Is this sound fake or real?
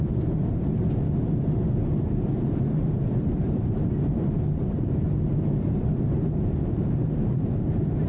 fake